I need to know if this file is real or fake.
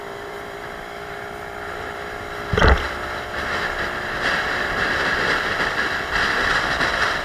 fake